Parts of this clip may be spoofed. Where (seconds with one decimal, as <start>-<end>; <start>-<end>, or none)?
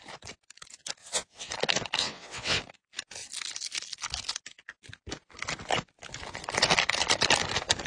1.0-1.5; 2.0-2.6